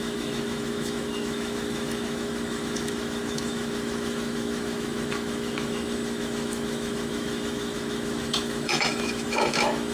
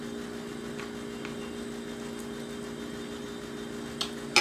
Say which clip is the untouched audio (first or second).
second